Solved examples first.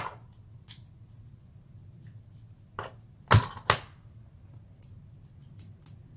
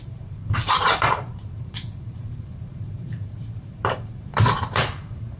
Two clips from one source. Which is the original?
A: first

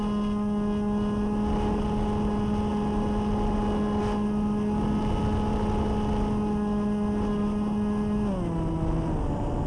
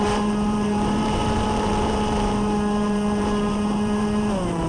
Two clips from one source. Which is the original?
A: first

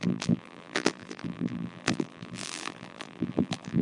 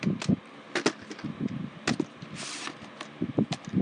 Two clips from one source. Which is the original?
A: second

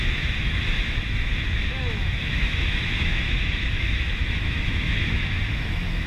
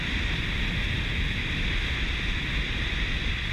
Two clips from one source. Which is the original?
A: second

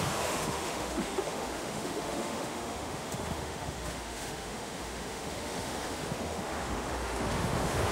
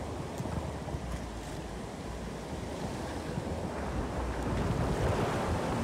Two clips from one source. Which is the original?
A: second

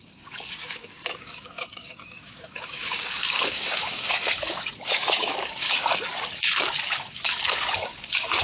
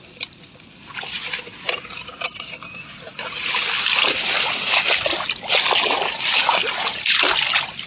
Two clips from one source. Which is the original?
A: second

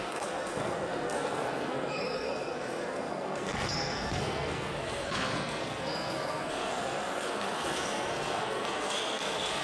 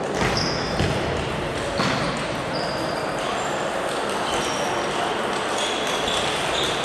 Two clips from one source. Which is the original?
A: second